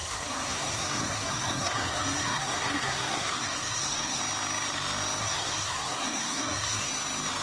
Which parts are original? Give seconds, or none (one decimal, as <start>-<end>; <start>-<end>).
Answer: 4.2-5.2; 6.9-7.4